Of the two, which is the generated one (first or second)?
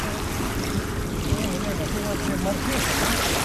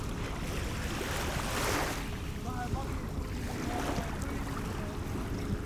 first